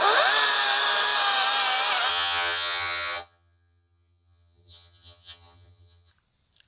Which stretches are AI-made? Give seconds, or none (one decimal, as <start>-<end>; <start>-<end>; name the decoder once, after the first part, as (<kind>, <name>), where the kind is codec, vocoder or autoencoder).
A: 2.1-6.1 (vocoder, HiFi-GAN)